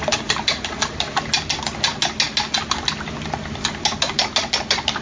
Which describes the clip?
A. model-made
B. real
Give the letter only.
B